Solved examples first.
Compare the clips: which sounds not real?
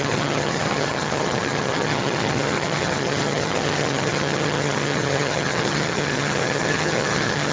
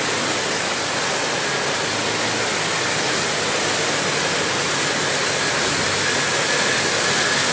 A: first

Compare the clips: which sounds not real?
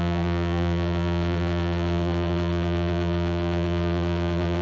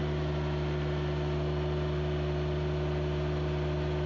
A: first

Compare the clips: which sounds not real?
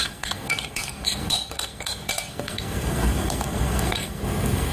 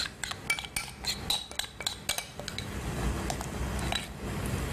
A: first